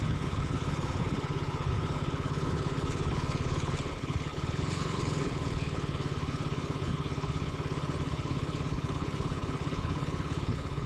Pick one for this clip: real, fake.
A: fake